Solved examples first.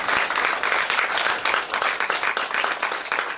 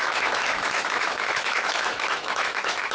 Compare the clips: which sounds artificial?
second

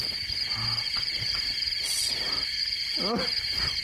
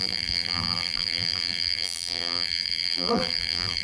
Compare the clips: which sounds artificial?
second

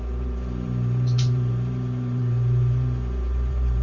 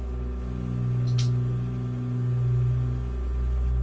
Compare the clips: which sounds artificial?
first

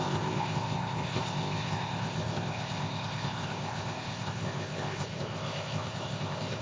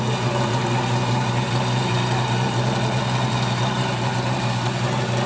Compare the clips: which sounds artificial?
first